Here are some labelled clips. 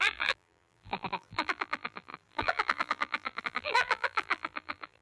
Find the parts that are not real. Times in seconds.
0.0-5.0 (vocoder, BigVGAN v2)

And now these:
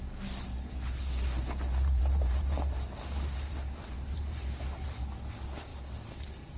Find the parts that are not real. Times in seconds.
1.0-5.0 (vocoder, BigVGAN v2)

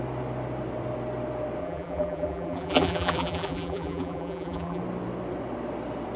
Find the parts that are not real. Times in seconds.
1.6-4.8 (vocoder, BigVGAN v2)

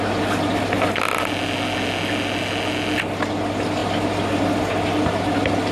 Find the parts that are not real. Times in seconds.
none

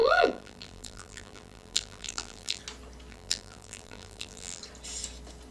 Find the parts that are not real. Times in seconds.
0.0-2.6 (vocoder, BigVGAN v2); 3.1-4.6